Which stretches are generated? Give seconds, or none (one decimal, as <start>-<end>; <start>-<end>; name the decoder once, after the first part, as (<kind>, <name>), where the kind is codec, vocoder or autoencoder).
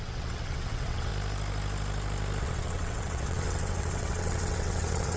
0.0-1.1 (vocoder, WaveNeXt); 2.4-5.2